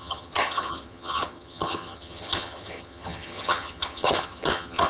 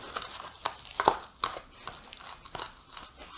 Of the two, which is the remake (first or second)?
first